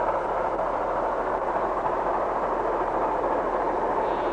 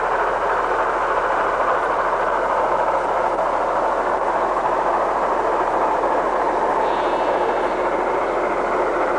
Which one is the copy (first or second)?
first